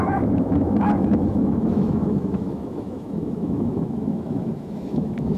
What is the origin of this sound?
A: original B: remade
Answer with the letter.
B